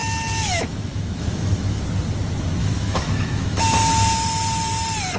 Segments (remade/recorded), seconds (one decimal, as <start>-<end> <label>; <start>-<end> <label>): 0.0-1.8 remade; 1.8-2.6 recorded; 2.6-3.6 remade; 3.6-5.2 recorded